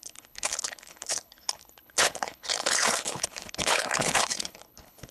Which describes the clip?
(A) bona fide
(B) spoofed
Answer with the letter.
B